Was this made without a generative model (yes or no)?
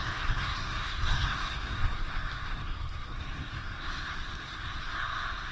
no